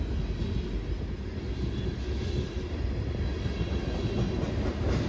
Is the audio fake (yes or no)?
no